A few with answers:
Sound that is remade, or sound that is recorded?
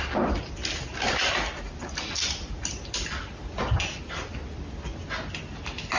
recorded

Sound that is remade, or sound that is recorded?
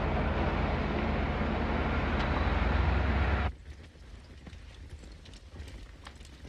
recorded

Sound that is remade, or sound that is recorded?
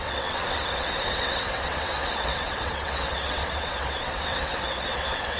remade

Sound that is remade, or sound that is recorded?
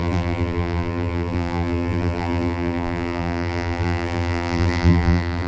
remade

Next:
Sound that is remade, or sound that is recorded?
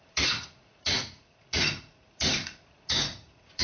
remade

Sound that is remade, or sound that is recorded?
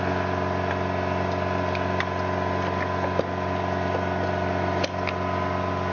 recorded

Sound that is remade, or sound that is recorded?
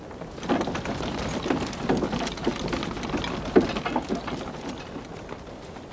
recorded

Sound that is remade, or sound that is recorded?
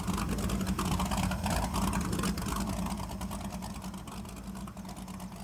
recorded